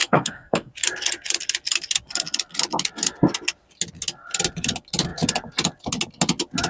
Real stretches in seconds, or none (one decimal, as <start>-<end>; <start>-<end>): 0.7-6.7